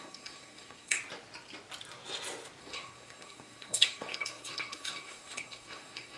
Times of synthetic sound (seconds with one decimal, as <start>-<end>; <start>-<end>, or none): 0.0-1.0; 2.6-6.2